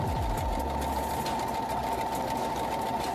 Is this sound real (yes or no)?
yes